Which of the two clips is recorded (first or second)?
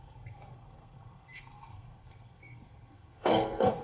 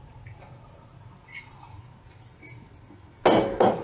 second